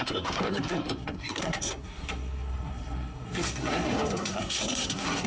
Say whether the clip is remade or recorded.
remade